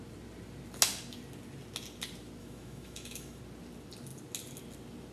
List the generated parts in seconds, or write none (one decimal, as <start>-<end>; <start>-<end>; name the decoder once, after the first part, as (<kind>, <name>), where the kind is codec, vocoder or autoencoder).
2.4-3.4 (autoencoder, DAC-VAE)